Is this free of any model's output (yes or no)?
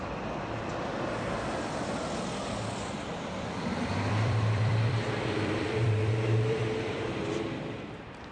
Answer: no